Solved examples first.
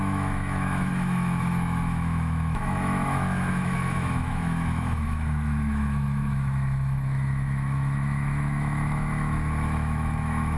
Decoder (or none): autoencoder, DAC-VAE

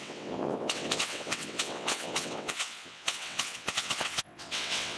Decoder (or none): vocoder, WaveNeXt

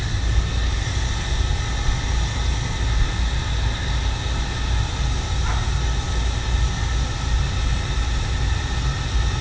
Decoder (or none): none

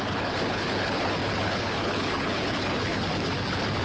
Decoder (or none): codec, HILCodec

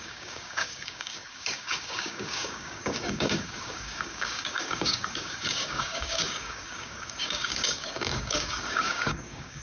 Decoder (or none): codec, DAC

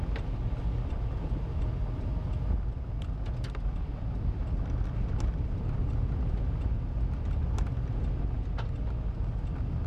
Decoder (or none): none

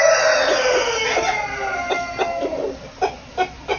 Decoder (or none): none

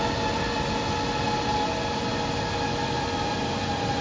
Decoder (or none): none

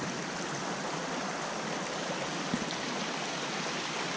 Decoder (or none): none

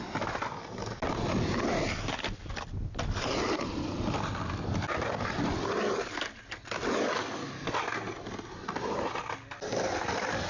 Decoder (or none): none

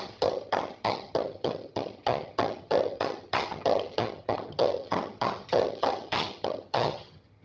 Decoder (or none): vocoder, HiFi-GAN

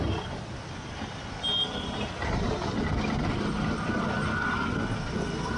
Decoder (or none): none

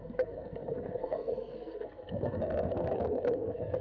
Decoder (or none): codec, SNAC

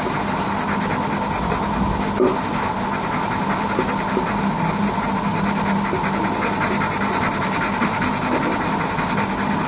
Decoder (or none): none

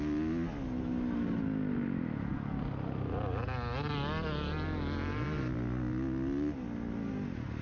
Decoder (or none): none